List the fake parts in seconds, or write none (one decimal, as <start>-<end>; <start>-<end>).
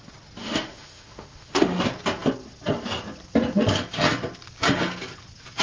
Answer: 0.4-1.8